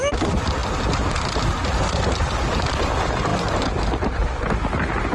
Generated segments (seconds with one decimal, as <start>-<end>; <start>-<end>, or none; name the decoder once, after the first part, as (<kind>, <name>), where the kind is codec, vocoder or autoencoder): none